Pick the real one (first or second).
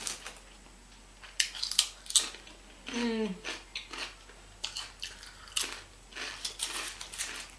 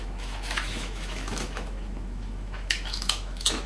first